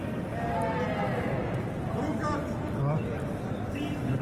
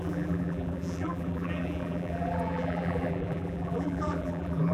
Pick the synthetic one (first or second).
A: second